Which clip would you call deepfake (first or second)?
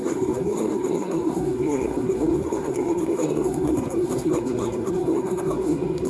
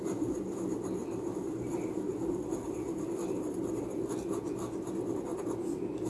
first